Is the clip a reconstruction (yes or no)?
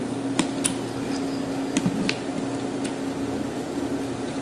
no